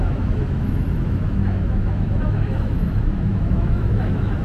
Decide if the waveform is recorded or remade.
remade